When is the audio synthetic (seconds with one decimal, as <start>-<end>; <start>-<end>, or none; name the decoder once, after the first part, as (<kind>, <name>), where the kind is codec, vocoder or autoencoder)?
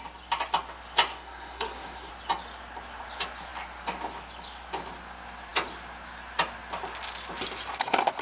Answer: 1.1-2.1 (codec, SNAC)